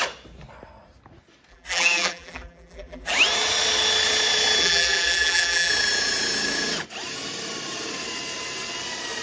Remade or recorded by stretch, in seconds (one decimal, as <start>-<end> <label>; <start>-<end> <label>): 0.0-1.5 recorded; 1.5-3.1 remade; 3.1-4.6 recorded; 4.6-5.7 remade; 5.7-9.2 recorded